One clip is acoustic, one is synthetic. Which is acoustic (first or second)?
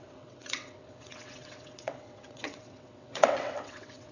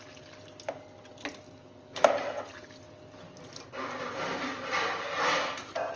second